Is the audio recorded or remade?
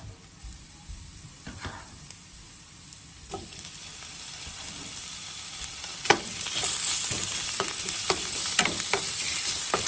remade